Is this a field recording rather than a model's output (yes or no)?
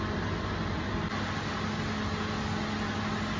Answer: yes